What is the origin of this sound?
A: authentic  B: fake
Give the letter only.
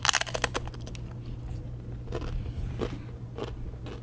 A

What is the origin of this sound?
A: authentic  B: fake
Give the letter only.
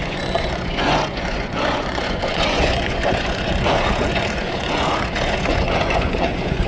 B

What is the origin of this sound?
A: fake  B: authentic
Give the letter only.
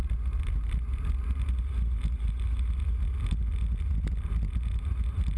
B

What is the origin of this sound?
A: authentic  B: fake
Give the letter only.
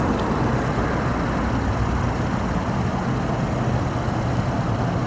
A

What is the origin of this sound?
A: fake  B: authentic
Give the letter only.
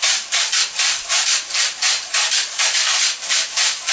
B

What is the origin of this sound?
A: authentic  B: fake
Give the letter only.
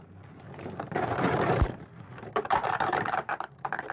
B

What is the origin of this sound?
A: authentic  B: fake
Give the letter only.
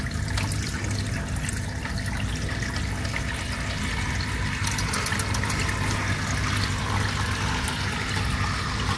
A